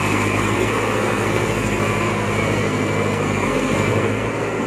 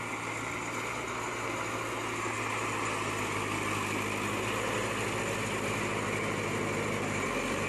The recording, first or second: second